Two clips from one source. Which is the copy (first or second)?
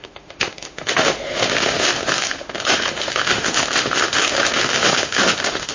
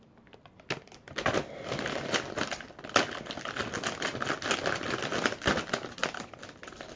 first